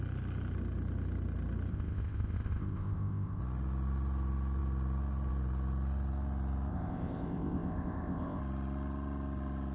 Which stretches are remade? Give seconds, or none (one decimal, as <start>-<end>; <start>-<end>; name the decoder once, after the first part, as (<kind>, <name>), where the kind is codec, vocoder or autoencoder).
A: 1.7-3.4 (codec, ZipCodec); 6.7-8.4